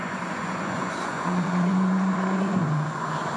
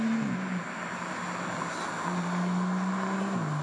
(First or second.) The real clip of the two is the second